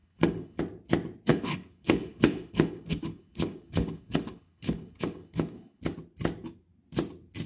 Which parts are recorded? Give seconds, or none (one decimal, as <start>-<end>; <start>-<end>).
0.6-1.3; 5.8-7.5